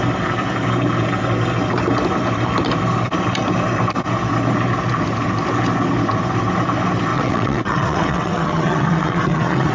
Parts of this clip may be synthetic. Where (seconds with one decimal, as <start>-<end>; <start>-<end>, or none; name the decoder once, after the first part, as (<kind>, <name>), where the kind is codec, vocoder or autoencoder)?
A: 7.1-9.7 (vocoder, WaveNeXt)